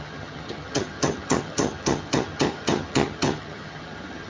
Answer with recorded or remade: remade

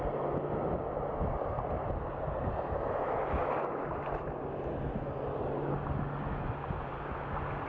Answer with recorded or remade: recorded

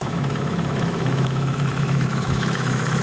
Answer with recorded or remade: remade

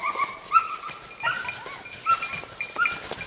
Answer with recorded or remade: recorded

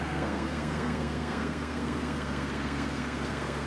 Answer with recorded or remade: remade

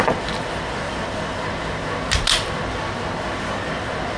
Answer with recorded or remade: recorded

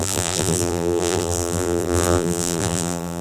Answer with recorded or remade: remade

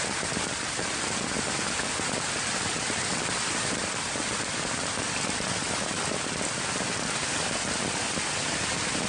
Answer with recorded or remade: recorded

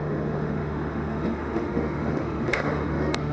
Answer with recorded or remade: remade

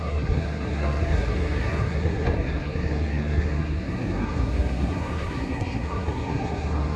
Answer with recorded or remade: remade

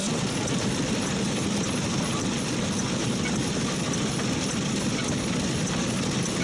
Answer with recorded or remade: recorded